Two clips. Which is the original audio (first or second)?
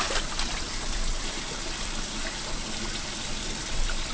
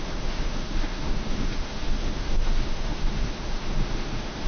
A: first